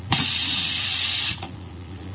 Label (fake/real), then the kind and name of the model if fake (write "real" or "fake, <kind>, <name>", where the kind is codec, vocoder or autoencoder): fake, vocoder, Vocos